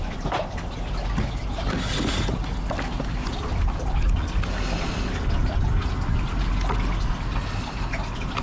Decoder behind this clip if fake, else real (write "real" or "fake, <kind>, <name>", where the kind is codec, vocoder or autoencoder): real